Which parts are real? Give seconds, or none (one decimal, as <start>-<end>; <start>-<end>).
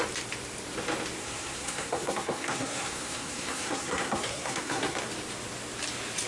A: 0.0-1.2; 5.0-6.3